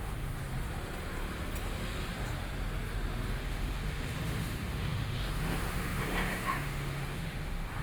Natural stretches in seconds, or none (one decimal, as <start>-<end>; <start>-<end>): 0.4-3.3

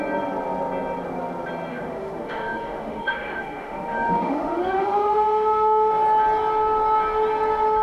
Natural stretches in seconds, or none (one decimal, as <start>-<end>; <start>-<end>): 0.0-1.7; 5.9-7.8

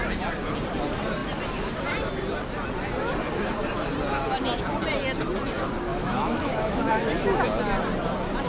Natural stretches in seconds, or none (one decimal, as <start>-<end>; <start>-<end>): 0.0-5.9; 7.1-8.5

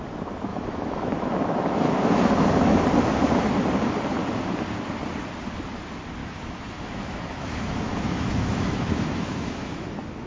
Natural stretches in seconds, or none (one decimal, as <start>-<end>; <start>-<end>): 0.0-0.5; 2.8-6.2

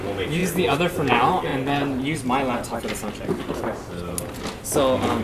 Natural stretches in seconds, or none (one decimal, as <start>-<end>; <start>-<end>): 0.0-5.2